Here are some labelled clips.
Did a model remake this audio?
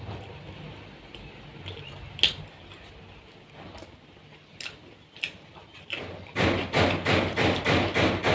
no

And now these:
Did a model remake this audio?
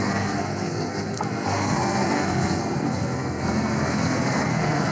yes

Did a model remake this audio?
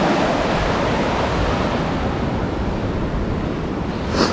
no